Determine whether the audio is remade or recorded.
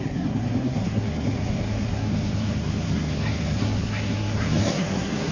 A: remade